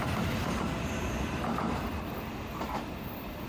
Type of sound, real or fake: fake